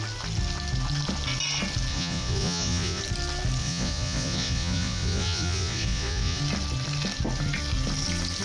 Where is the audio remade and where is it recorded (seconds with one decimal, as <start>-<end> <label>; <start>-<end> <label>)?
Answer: 0.0-1.9 recorded; 1.9-3.0 remade; 3.0-3.6 recorded; 3.6-6.4 remade; 6.4-8.4 recorded